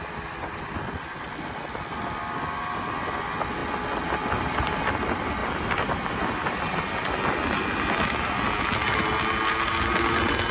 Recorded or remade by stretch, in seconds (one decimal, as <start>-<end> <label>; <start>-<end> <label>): 0.0-10.5 recorded